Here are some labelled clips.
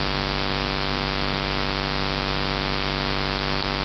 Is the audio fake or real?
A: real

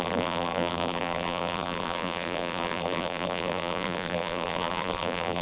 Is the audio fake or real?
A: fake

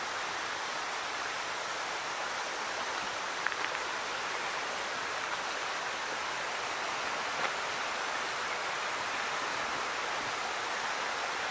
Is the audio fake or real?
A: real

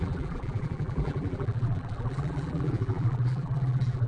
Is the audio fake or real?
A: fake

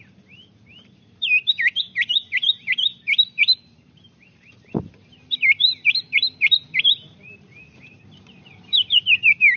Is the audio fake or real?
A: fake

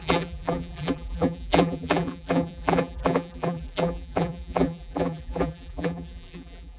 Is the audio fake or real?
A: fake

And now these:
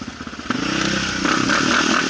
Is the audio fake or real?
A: real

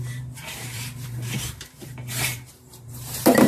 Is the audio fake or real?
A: fake